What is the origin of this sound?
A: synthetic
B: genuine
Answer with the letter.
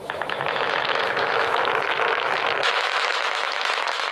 A